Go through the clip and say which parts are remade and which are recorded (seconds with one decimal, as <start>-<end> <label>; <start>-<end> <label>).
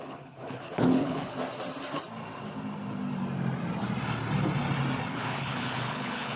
0.0-1.3 remade; 1.3-5.1 recorded; 5.1-6.4 remade